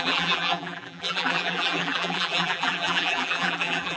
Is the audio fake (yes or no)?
yes